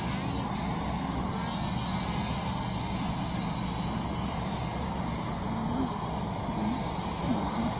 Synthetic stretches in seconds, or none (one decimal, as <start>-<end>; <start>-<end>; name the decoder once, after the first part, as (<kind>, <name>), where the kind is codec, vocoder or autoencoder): none